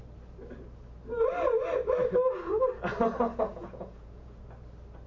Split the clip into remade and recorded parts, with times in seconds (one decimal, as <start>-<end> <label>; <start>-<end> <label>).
0.0-3.5 recorded; 3.5-4.4 remade; 4.4-5.1 recorded